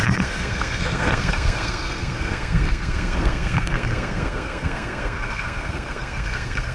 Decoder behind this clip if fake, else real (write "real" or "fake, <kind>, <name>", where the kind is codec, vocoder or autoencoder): fake, codec, SNAC